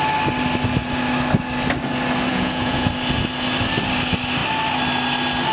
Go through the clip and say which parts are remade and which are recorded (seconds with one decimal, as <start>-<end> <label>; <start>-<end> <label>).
0.0-2.3 recorded; 2.3-2.9 remade; 2.9-5.5 recorded